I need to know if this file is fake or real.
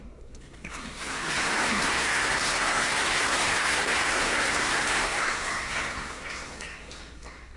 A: fake